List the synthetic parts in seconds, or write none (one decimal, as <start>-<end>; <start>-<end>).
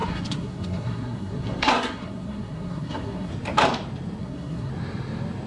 0.0-3.3; 4.2-4.7